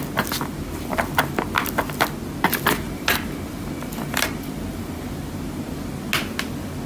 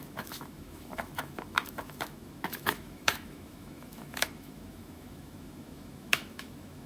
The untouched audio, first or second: first